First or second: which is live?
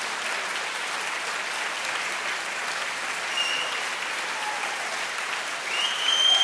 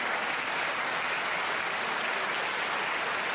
second